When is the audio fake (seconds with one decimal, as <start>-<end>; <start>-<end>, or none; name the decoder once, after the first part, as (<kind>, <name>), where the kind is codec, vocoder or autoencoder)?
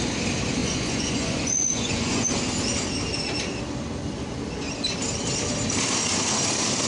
0.6-2.3 (vocoder, Vocos)